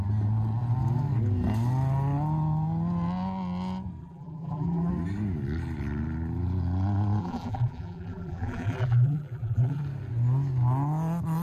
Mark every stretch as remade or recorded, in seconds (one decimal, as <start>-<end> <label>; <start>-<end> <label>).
0.0-4.0 recorded; 4.0-4.9 remade; 4.9-7.2 recorded; 7.2-9.8 remade; 9.8-11.4 recorded